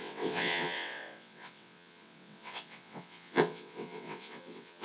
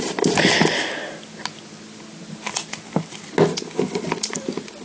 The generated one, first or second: first